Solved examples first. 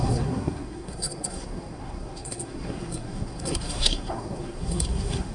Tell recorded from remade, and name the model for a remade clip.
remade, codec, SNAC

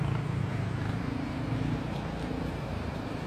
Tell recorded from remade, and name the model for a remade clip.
recorded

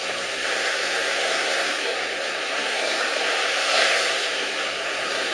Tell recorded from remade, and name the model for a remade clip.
remade, codec, SNAC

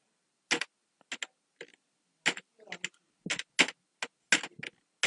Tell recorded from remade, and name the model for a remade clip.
recorded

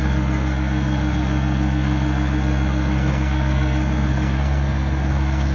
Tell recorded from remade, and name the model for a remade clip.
remade, codec, SNAC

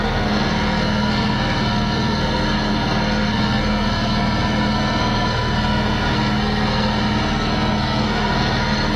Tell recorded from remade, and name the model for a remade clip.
remade, codec, SNAC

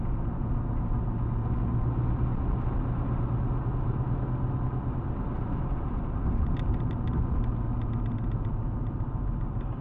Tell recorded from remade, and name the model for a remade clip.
recorded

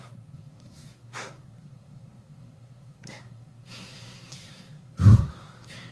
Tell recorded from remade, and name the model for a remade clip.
remade, codec, SNAC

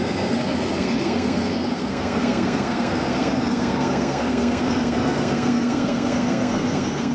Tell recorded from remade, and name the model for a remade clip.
remade, codec, SNAC